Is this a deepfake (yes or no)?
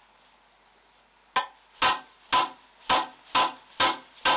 no